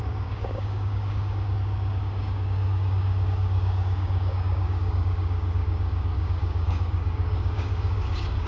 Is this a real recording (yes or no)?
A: no